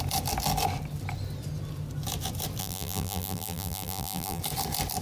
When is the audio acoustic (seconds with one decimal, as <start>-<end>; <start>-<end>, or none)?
0.0-2.6; 4.4-5.0